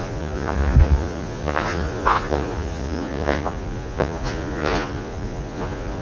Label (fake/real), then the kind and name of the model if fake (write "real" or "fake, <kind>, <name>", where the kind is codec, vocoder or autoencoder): fake, vocoder, Vocos